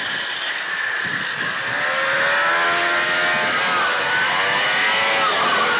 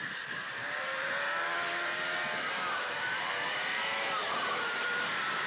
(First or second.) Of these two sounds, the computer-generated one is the second